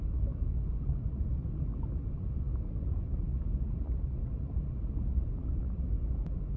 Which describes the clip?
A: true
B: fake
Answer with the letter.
A